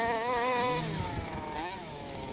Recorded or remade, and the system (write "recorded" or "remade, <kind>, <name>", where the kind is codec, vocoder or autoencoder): remade, autoencoder, DAC-VAE